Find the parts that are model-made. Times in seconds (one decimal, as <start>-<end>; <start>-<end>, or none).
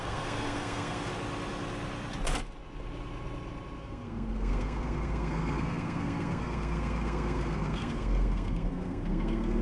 0.0-1.1; 3.8-9.6